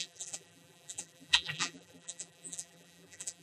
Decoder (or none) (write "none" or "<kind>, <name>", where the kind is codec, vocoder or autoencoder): vocoder, BigVGAN v2